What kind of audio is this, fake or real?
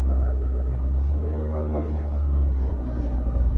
fake